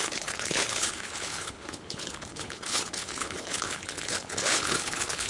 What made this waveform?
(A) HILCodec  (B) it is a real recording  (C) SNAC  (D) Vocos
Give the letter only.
A